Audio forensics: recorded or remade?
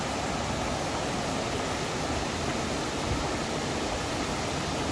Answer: recorded